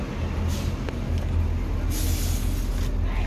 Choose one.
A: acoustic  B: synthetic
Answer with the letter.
A